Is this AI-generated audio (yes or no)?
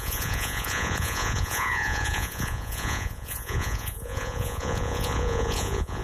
yes